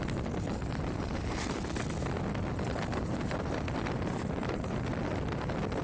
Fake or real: real